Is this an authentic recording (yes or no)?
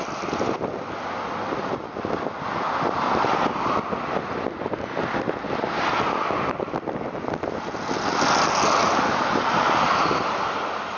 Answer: yes